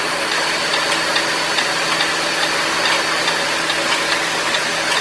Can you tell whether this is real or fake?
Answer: real